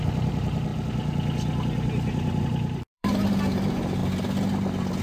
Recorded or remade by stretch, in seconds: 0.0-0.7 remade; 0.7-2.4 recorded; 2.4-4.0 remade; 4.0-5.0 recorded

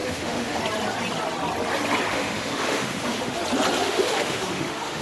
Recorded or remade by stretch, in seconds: 0.0-0.6 remade; 0.6-2.1 recorded; 2.1-3.4 remade; 3.4-3.8 recorded; 3.8-5.0 remade

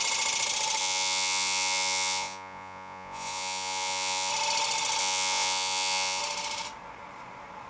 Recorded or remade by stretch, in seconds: 0.0-0.8 recorded; 0.8-4.3 remade; 4.3-5.0 recorded; 5.0-6.2 remade; 6.2-7.7 recorded

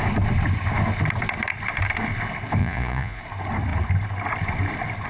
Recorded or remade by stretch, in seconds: 0.0-2.6 recorded; 2.6-3.2 remade; 3.2-5.1 recorded

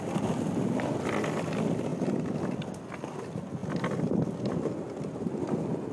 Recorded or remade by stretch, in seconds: 0.0-5.9 recorded